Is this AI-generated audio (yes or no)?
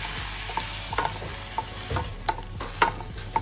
no